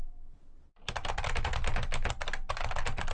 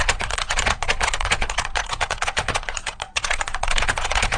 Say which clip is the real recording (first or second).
first